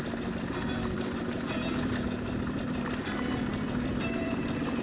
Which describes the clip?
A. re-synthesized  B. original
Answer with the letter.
A